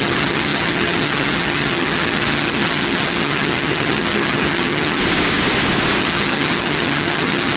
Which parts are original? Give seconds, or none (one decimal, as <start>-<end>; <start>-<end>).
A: 5.0-6.0